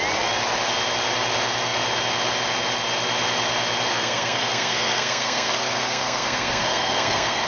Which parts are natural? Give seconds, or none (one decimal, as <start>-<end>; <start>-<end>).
0.0-3.9